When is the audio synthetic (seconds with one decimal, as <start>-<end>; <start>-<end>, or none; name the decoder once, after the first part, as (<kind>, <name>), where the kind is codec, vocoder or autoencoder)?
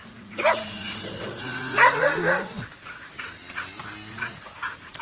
0.0-3.4 (vocoder, Vocos); 4.1-5.0